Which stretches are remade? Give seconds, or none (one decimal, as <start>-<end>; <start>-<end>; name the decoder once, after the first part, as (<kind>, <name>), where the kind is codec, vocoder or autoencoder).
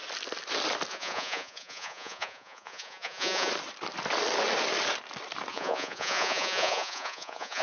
0.9-3.5 (vocoder, Vocos); 5.5-7.6